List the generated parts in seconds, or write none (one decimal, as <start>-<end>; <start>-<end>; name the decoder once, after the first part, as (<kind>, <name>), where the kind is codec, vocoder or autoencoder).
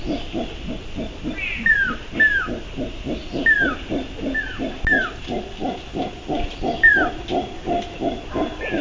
5.6-7.1 (vocoder, BigVGAN v2)